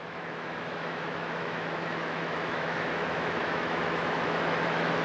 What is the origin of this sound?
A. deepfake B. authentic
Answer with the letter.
A